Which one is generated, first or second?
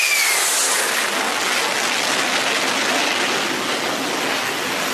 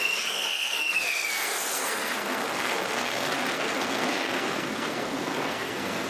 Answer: second